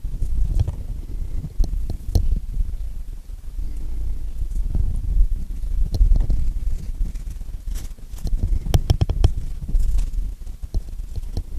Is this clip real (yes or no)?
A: yes